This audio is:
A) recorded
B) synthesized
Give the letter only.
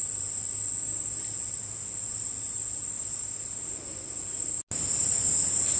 A